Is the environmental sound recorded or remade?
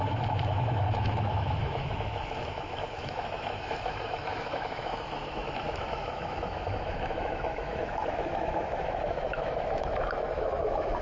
remade